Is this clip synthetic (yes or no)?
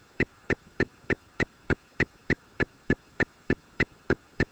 yes